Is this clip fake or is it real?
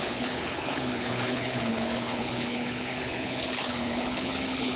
fake